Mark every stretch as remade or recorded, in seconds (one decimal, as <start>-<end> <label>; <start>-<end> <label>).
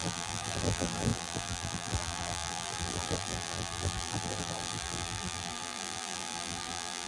0.0-7.1 remade